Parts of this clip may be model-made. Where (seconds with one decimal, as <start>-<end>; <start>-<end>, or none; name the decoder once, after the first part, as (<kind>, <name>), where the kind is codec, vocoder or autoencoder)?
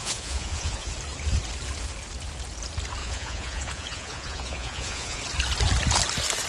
0.0-0.9 (vocoder, Vocos); 3.0-5.2